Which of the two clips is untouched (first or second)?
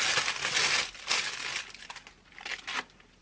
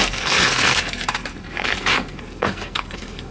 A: first